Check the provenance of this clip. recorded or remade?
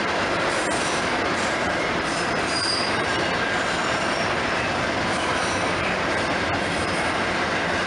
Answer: remade